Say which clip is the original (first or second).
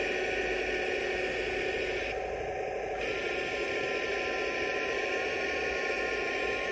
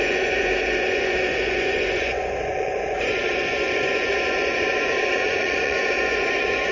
first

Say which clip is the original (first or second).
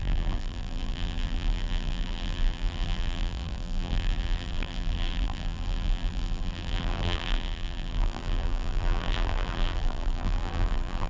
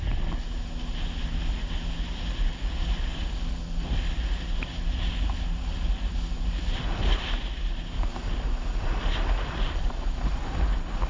second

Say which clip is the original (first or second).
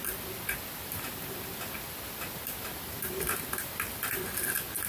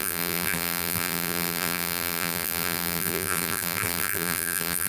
first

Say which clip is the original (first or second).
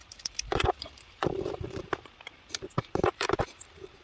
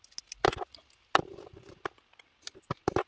second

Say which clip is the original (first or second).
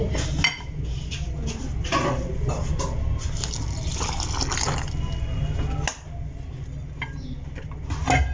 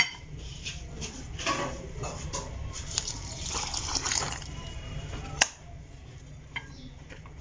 first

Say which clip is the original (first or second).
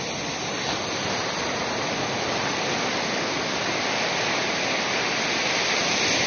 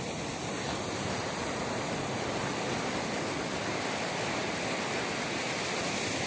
first